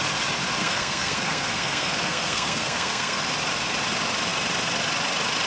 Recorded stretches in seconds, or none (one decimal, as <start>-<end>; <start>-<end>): 0.0-0.6; 3.2-5.5